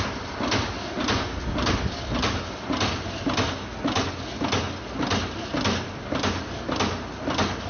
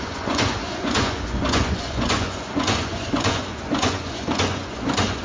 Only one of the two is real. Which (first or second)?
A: first